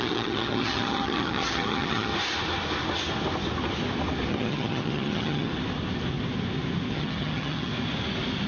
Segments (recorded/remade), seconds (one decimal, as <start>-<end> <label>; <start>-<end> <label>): 0.0-2.1 remade; 2.1-4.3 recorded; 4.3-5.5 remade; 5.5-6.9 recorded; 6.9-7.7 remade; 7.7-8.5 recorded